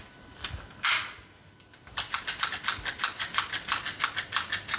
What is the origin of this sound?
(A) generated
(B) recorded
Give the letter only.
B